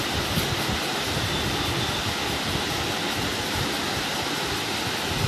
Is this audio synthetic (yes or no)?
no